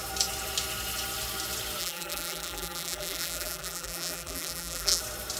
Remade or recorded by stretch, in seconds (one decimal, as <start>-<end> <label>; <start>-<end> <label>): 0.0-1.8 recorded; 1.8-5.0 remade; 5.0-5.4 recorded